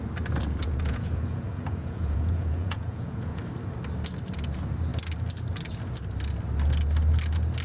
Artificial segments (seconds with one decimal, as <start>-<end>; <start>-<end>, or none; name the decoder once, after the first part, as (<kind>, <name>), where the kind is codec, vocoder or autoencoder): 0.6-3.4 (vocoder, Vocos)